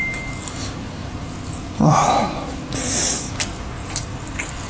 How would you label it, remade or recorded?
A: recorded